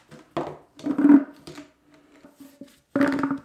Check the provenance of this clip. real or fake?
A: real